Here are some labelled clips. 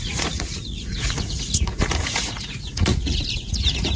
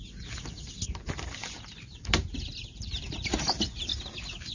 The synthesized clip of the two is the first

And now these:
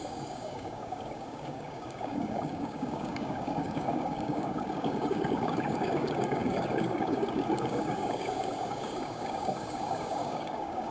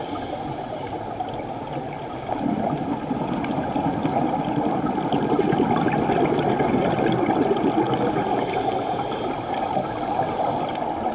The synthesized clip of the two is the first